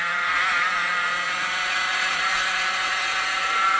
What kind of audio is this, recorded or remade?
remade